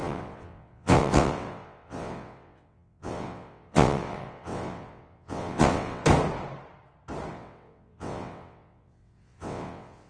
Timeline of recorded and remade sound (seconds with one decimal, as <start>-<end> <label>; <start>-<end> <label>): 0.0-6.0 remade; 6.0-7.3 recorded; 7.3-10.1 remade